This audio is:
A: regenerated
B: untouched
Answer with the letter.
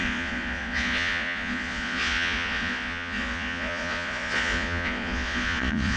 A